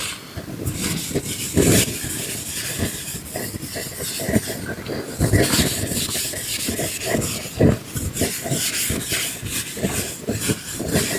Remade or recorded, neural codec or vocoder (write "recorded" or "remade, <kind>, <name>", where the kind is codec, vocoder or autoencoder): recorded